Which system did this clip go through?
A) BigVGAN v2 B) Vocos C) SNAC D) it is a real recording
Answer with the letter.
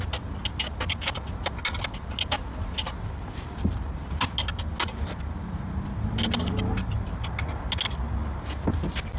D